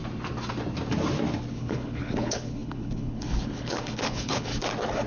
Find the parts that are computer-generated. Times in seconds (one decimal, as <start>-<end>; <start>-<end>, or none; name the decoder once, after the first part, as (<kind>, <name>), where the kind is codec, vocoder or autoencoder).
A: 1.5-4.5 (codec, HILCodec)